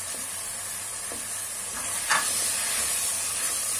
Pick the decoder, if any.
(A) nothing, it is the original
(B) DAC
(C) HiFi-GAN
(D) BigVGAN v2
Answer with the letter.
D